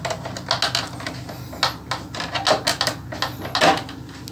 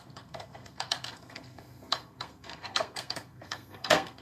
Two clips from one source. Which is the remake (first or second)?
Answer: second